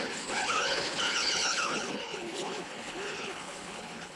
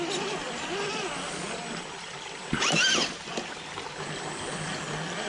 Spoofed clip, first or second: first